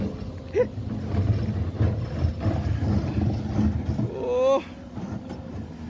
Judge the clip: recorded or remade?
recorded